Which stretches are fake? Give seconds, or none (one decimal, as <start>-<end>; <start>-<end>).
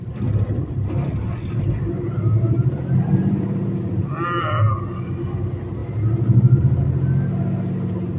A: 2.3-4.7